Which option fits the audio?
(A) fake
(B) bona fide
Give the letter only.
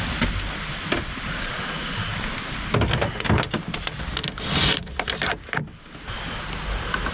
B